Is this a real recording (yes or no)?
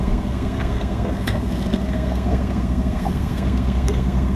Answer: no